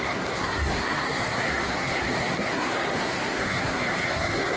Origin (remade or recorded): remade